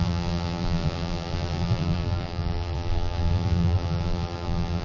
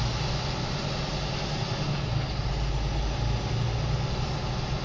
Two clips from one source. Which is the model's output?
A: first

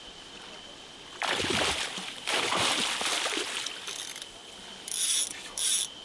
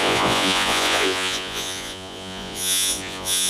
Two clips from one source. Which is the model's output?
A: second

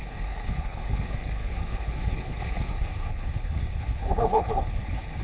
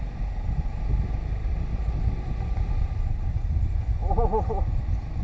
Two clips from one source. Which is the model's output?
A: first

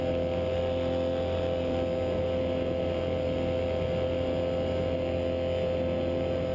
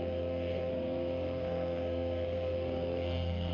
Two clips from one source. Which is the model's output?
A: second